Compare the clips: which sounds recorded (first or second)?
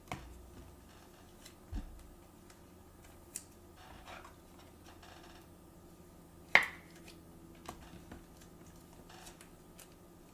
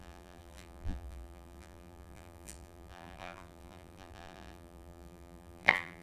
first